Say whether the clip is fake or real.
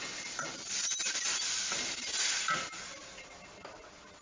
real